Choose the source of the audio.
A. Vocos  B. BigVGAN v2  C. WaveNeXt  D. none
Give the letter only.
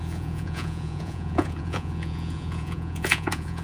A